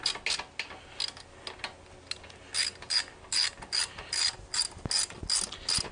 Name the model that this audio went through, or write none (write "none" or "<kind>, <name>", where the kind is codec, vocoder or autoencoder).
none